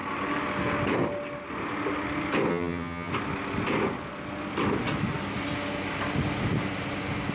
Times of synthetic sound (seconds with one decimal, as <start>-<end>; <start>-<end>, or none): 2.5-3.1